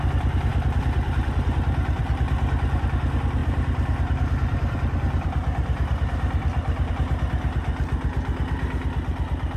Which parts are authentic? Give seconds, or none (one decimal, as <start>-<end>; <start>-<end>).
0.0-0.5; 2.0-3.4; 6.9-9.6